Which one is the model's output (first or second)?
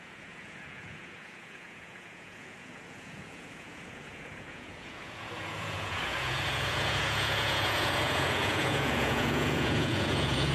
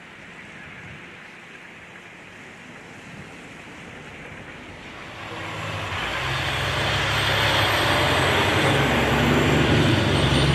first